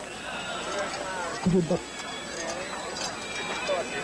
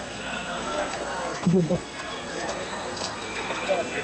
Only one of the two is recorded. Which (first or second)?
first